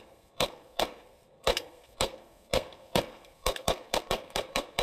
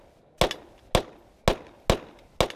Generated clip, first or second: first